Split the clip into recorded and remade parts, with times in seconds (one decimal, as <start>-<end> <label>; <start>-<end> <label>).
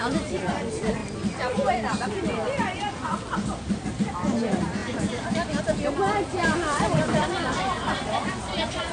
0.0-1.0 remade; 1.0-2.1 recorded; 2.1-8.9 remade